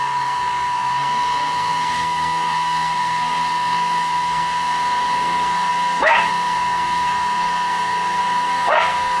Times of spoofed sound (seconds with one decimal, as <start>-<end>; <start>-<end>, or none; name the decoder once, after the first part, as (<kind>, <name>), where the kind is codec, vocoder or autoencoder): 0.0-9.2 (codec, SNAC)